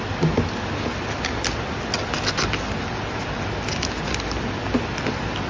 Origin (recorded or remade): recorded